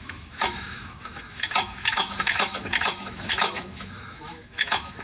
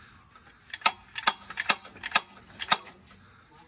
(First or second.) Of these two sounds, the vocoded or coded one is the first